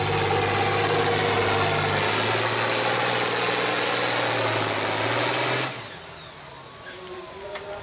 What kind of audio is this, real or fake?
real